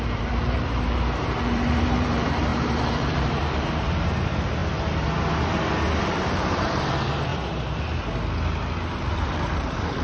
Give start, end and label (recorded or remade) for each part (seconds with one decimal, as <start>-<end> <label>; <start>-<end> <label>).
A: 0.0-4.6 remade; 4.6-6.0 recorded; 6.0-7.3 remade; 7.3-9.1 recorded; 9.1-10.0 remade

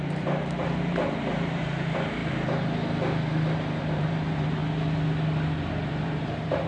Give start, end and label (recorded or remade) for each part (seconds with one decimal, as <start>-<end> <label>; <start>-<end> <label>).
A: 0.0-2.2 remade; 2.2-3.8 recorded; 3.8-4.6 remade; 4.6-5.7 recorded; 5.7-6.7 remade

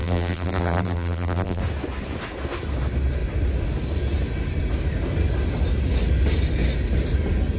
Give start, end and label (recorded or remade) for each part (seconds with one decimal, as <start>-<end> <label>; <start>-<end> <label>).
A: 0.0-1.6 remade; 1.6-7.6 recorded

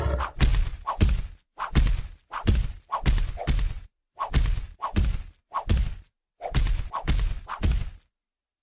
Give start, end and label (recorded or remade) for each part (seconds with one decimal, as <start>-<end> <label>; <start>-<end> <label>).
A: 0.0-8.6 recorded

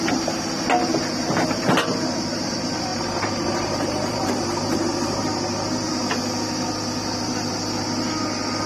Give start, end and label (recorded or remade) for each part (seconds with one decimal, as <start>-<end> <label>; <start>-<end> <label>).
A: 0.0-2.9 recorded; 2.9-4.3 remade; 4.3-8.7 recorded

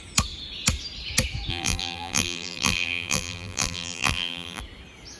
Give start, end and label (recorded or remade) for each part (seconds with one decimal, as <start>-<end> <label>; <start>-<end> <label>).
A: 0.0-1.5 recorded; 1.5-4.6 remade; 4.6-5.2 recorded

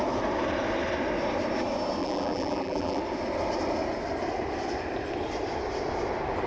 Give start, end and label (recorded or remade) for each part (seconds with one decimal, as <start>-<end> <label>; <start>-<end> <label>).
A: 0.0-2.0 recorded; 2.0-3.0 remade; 3.0-6.5 recorded

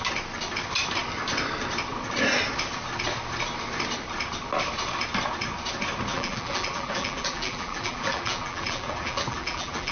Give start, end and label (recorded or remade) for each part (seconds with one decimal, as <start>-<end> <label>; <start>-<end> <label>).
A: 0.0-6.1 recorded; 6.1-9.9 remade